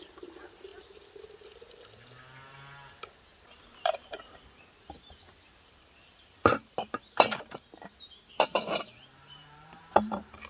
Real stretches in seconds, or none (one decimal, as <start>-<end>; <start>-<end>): 0.7-3.8